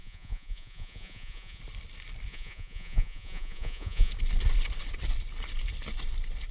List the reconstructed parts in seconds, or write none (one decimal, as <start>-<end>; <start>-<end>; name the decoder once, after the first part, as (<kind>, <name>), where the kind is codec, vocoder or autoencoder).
0.0-1.6 (vocoder, Vocos); 2.3-4.1